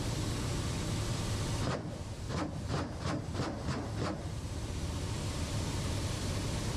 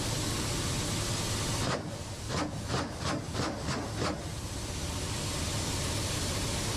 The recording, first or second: second